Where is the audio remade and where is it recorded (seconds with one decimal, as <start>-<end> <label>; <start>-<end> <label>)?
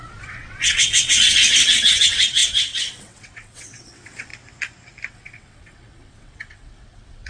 0.0-4.3 remade; 4.3-5.1 recorded; 5.1-7.3 remade